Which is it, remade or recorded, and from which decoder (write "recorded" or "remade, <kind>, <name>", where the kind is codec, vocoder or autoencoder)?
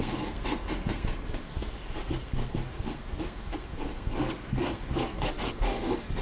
remade, codec, SNAC